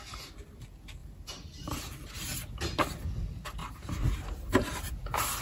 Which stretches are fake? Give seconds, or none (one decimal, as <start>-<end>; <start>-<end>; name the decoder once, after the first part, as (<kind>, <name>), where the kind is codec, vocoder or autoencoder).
1.0-1.8 (vocoder, BigVGAN v2); 3.6-4.9